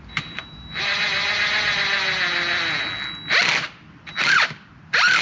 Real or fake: real